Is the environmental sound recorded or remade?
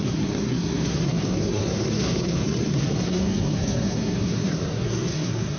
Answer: remade